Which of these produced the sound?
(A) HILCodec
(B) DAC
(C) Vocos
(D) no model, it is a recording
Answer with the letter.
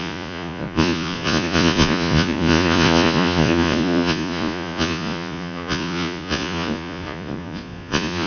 C